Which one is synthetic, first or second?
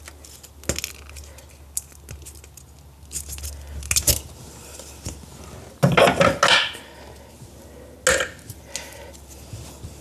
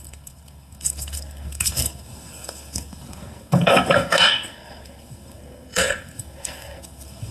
second